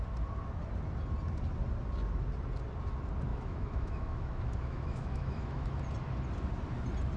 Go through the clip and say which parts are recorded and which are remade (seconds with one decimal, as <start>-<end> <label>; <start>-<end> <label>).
0.0-3.3 recorded; 3.3-5.8 remade; 5.8-7.2 recorded